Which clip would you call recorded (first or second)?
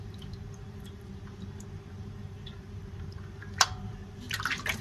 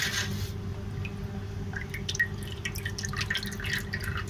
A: second